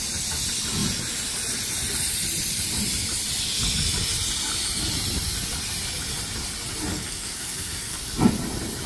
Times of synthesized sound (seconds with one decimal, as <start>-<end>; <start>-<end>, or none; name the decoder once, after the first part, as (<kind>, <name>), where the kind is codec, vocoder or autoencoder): 6.9-8.1 (codec, SNAC)